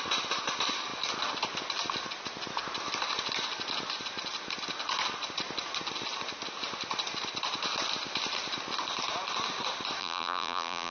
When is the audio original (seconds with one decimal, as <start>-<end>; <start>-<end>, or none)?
0.0-10.0